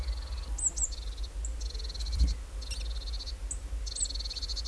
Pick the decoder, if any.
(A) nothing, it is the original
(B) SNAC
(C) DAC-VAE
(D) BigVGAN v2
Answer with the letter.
A